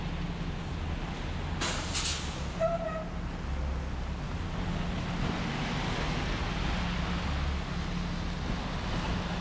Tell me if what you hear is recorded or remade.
recorded